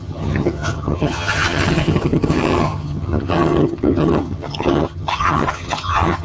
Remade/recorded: remade